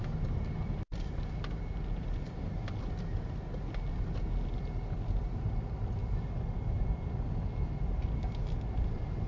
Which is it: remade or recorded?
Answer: recorded